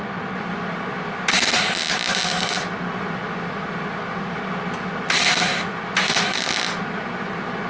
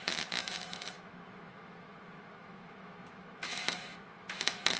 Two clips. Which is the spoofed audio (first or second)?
second